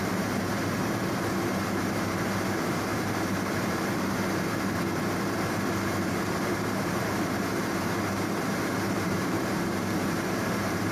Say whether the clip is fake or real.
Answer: fake